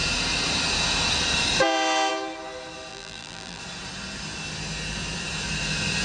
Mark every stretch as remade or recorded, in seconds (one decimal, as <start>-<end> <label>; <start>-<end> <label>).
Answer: 0.0-2.9 recorded; 2.9-3.6 remade; 3.6-6.0 recorded